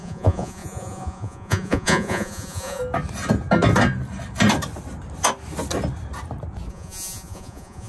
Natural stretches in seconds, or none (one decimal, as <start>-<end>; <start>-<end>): 2.8-6.7